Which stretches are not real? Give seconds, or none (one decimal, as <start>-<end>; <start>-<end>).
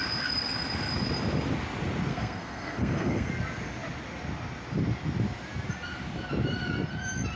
2.1-3.3